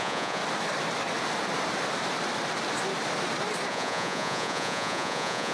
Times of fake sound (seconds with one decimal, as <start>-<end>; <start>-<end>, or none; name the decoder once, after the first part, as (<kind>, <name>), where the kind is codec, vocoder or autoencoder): 0.0-0.4 (vocoder, Vocos); 3.7-5.5